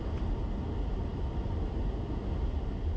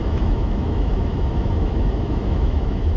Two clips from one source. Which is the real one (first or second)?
first